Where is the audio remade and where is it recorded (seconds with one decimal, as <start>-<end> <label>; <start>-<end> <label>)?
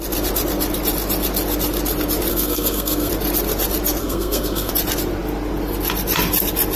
0.0-2.3 recorded; 2.3-3.1 remade; 3.1-4.0 recorded; 4.0-4.7 remade; 4.7-6.8 recorded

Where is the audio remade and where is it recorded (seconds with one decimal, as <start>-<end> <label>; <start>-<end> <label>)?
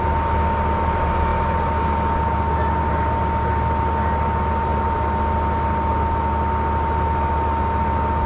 0.0-8.3 recorded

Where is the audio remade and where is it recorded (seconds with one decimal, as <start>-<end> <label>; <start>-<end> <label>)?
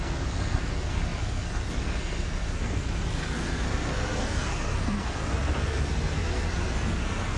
0.0-7.4 remade